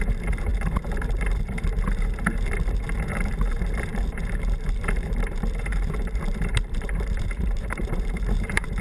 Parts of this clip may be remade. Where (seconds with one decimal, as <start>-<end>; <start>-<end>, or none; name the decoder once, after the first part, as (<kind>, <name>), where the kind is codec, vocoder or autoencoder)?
0.0-8.8 (vocoder, BigVGAN v2)